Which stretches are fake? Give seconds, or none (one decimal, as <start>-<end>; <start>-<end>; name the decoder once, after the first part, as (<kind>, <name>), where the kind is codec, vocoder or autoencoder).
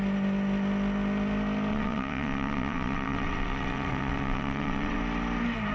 1.7-5.0 (vocoder, WaveNeXt)